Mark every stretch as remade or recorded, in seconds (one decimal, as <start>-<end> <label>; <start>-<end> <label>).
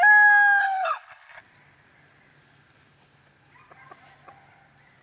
0.0-0.6 recorded; 0.6-1.4 remade; 1.4-5.0 recorded